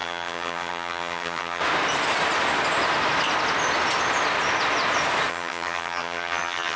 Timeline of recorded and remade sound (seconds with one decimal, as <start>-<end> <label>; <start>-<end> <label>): 0.0-1.6 remade; 1.6-5.3 recorded; 5.3-6.8 remade